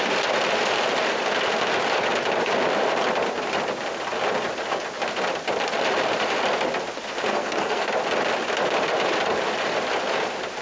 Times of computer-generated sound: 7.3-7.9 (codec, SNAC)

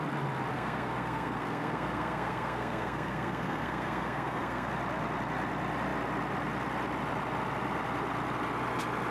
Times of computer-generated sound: 0.5-4.7 (codec, SNAC)

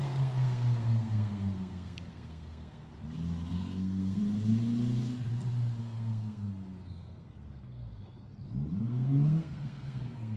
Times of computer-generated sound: 0.0-2.9 (codec, SNAC); 3.5-4.2; 5.8-8.3; 8.8-10.4

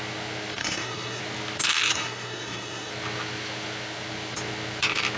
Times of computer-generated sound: 0.6-1.2 (codec, SNAC); 1.9-2.9

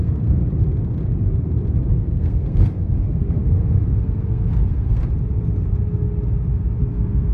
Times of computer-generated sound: 0.0-0.4 (codec, SNAC); 1.9-5.0; 6.8-7.3

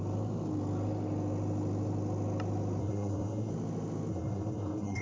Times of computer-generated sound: 2.8-3.5 (codec, SNAC); 4.1-5.0

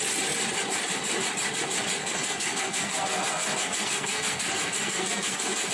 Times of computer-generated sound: 2.0-5.7 (codec, SNAC)